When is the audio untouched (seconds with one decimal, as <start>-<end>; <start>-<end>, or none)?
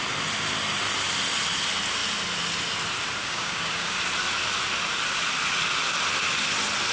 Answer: 0.0-3.2; 4.0-6.9